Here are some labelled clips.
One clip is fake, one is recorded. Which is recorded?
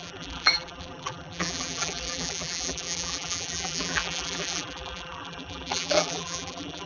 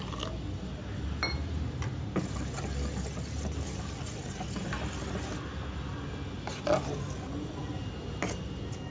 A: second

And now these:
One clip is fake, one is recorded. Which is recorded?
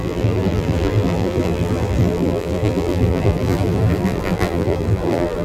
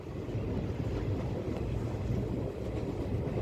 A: second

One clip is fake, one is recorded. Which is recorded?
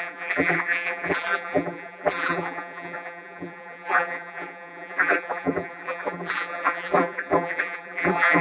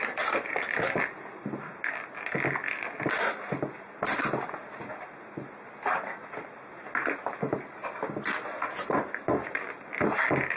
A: second